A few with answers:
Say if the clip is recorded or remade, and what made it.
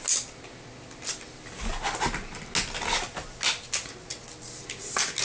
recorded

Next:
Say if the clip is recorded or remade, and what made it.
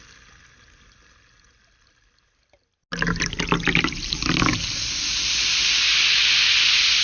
recorded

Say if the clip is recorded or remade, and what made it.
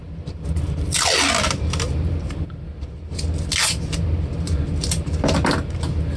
recorded